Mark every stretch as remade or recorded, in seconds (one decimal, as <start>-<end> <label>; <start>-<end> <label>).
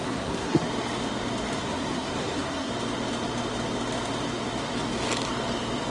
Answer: 0.0-0.6 remade; 0.6-1.6 recorded; 1.6-2.7 remade; 2.7-5.9 recorded